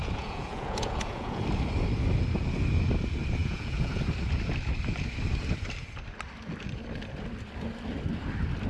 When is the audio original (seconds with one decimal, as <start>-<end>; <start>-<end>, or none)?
1.4-3.4; 4.0-8.7